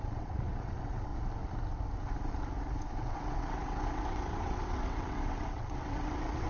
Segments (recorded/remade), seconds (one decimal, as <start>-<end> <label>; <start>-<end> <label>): 0.0-1.1 remade; 1.1-3.0 recorded; 3.0-6.5 remade